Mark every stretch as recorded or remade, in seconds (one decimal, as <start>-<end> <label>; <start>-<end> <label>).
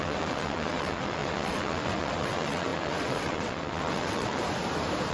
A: 0.0-4.4 remade; 4.4-5.1 recorded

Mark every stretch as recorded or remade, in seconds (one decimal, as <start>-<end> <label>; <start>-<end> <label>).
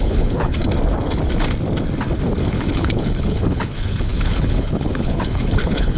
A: 0.0-0.6 remade; 0.6-2.4 recorded; 2.4-6.0 remade